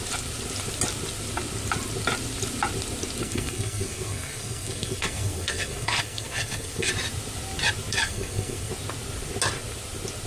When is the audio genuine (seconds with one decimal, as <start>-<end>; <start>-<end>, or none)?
0.0-3.2; 6.9-7.9; 8.7-10.3